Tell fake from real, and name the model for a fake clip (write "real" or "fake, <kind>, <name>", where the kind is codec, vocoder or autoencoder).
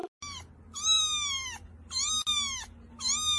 real